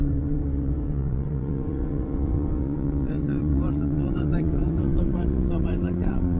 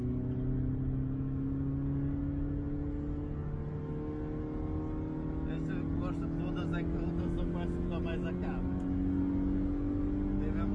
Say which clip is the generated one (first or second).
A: first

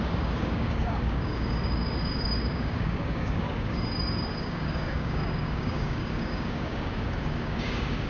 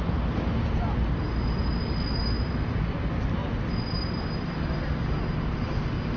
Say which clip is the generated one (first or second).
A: first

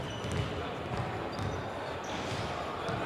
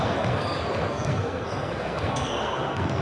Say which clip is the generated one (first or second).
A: second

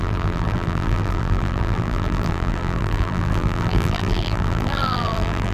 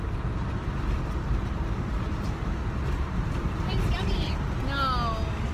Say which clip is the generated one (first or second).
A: first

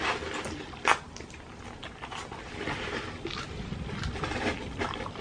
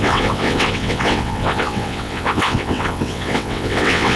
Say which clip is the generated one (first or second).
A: second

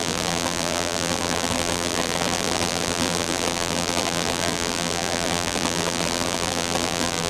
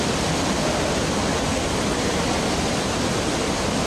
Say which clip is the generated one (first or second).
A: first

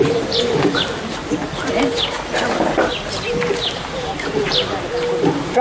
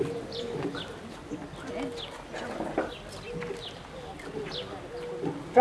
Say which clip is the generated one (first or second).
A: first